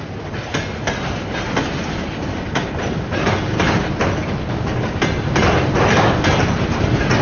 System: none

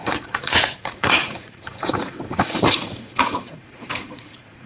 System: vocoder, Vocos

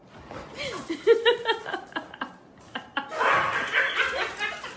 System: none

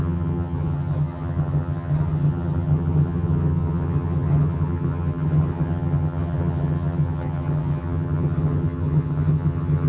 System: vocoder, HiFi-GAN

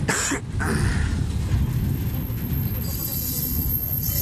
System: none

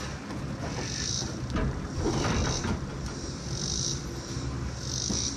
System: none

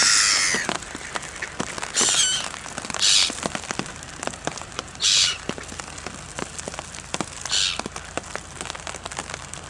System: none